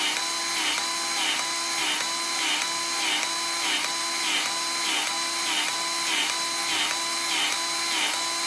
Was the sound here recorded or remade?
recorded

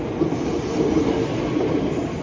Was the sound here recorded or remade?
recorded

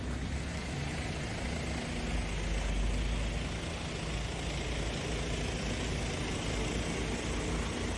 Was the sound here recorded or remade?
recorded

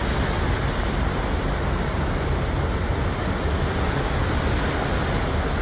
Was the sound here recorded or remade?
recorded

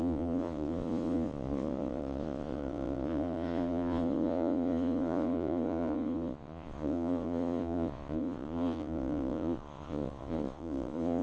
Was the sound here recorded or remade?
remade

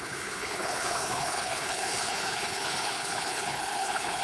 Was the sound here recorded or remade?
remade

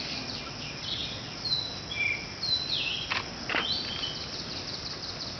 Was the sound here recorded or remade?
recorded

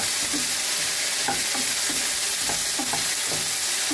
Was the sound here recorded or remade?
recorded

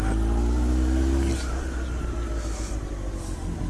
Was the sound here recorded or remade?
recorded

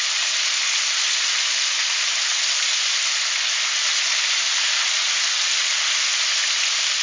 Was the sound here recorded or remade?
recorded